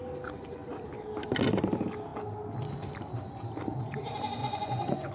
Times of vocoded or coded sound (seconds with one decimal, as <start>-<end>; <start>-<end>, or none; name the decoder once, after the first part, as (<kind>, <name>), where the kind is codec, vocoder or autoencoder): 4.4-5.1 (vocoder, Vocos)